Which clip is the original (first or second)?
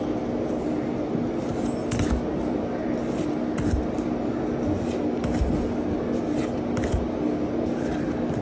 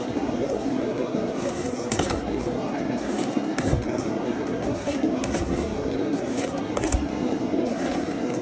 first